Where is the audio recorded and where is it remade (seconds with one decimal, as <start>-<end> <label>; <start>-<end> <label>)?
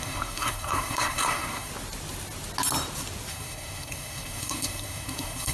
0.0-1.7 remade; 1.7-3.3 recorded; 3.3-5.5 remade